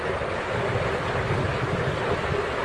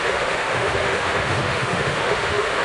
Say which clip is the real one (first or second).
first